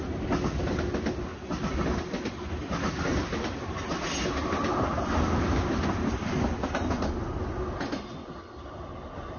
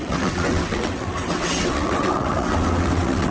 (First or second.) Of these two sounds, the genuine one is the first